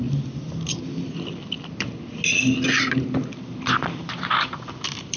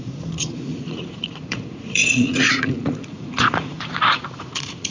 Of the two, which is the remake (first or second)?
second